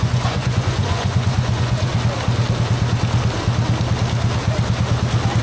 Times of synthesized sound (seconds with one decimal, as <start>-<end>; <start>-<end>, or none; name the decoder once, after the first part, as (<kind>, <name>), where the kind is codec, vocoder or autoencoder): 0.0-1.9 (vocoder, Vocos)